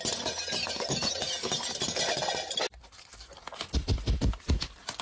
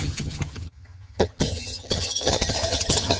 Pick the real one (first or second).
first